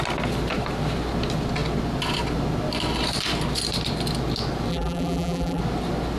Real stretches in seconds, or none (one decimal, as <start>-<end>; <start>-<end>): 0.0-4.7; 5.6-6.2

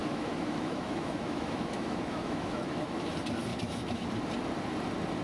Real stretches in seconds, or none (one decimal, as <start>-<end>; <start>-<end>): 3.1-3.5; 4.1-5.2

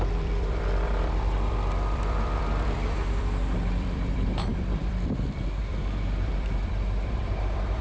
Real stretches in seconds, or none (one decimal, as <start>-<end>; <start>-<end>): none

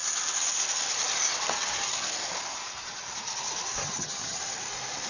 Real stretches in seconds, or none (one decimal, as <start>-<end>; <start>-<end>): 0.0-3.8; 4.4-5.1

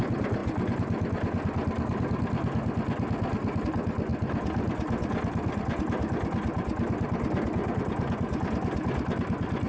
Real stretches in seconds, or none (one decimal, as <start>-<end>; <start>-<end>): 0.0-9.7

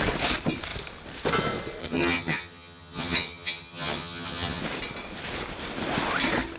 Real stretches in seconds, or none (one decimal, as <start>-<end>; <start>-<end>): 0.0-1.8; 4.6-6.6

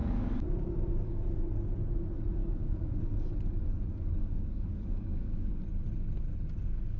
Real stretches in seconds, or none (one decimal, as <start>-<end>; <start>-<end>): 0.5-2.4; 3.0-4.2; 5.5-7.0